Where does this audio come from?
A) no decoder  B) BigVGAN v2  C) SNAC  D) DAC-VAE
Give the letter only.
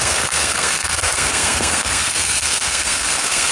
C